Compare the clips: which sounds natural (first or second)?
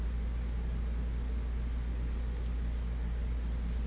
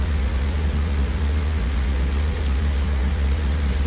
first